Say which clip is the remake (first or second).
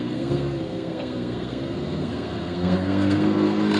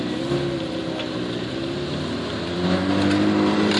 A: first